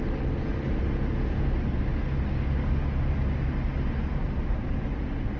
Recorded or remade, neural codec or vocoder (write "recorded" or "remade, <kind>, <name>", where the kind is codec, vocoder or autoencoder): recorded